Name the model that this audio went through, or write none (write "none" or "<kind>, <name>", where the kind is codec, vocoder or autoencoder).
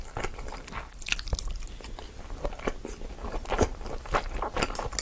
none